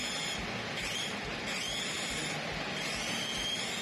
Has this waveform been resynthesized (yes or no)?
no